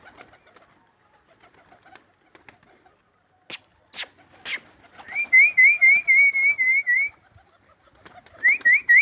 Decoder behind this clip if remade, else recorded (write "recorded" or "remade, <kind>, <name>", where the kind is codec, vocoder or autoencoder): recorded